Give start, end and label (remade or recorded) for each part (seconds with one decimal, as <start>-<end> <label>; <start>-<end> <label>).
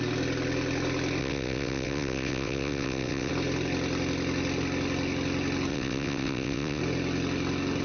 0.0-1.2 recorded; 1.2-3.3 remade; 3.3-5.7 recorded; 5.7-6.8 remade; 6.8-7.8 recorded